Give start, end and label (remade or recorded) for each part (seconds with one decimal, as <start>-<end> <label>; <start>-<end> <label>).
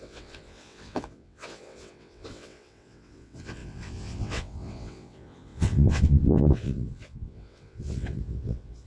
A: 0.0-8.9 remade